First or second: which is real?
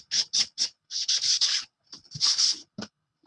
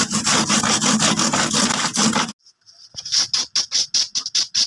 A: second